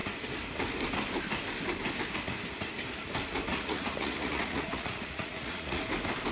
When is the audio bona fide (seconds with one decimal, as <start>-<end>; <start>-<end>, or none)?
0.0-3.5; 5.8-6.3